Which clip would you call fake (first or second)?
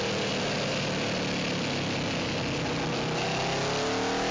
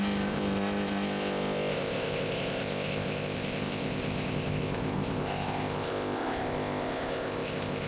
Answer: second